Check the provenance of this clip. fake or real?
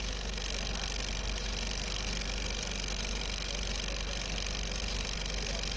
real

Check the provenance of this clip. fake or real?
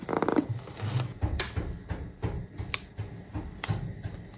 real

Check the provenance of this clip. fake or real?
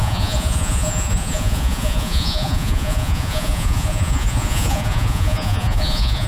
fake